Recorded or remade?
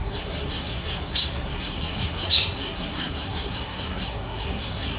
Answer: remade